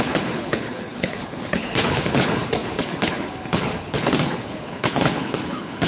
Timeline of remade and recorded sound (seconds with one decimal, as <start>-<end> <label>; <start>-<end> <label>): 0.0-5.9 remade